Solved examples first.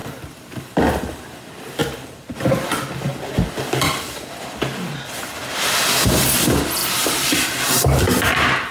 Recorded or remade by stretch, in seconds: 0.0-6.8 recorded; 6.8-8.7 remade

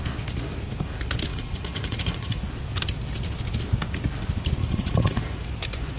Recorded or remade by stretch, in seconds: 0.0-1.3 recorded; 1.3-2.4 remade; 2.4-4.6 recorded; 4.6-5.4 remade; 5.4-6.0 recorded

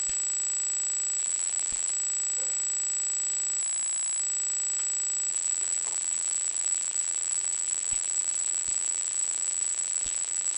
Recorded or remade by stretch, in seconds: 0.0-1.2 recorded; 1.2-1.9 remade; 1.9-5.3 recorded; 5.3-10.6 remade

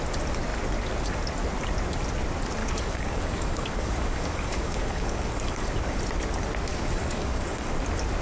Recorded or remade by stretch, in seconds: 0.0-2.6 recorded; 2.6-6.0 remade; 6.0-6.7 recorded; 6.7-7.7 remade; 7.7-8.2 recorded

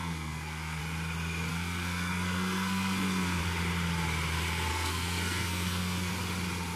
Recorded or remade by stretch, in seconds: 0.0-0.8 remade; 0.8-1.5 recorded; 1.5-3.4 remade; 3.4-4.7 recorded; 4.7-6.1 remade; 6.1-6.8 recorded

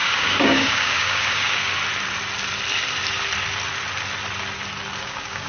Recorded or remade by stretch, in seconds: 0.0-1.7 remade; 1.7-5.0 recorded; 5.0-5.5 remade

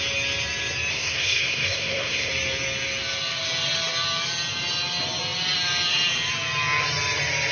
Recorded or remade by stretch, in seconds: 0.0-0.9 recorded; 0.9-2.3 remade; 2.3-7.5 recorded

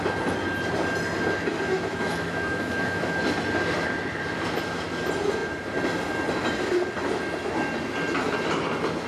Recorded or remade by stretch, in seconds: 0.0-1.9 recorded; 1.9-3.2 remade; 3.2-9.1 recorded